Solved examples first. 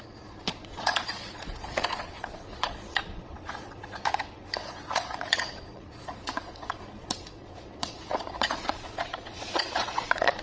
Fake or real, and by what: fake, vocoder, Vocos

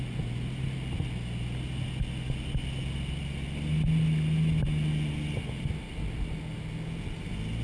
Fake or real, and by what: real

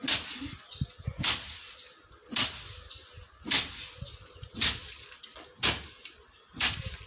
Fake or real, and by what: real